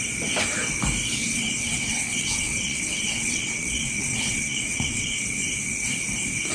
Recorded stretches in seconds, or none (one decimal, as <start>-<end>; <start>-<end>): 0.0-1.3; 5.2-6.5